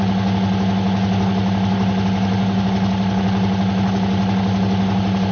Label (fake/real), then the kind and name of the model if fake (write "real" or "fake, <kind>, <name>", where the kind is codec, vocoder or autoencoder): real